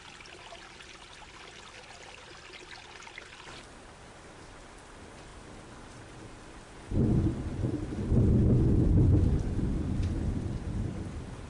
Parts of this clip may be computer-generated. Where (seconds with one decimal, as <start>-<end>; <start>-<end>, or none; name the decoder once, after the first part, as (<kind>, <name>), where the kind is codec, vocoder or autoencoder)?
none